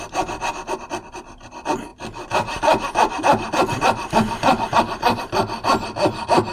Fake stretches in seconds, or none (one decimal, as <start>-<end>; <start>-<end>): none